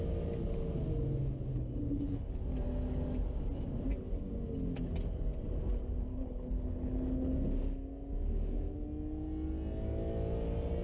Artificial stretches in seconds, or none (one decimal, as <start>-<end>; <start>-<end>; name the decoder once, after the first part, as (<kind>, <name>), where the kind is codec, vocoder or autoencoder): 1.5-2.4 (codec, HILCodec); 6.1-7.3